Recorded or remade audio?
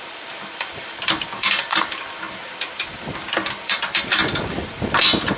remade